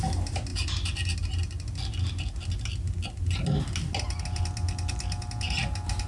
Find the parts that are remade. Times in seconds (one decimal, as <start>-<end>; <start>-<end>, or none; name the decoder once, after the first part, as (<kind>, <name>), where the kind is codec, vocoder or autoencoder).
none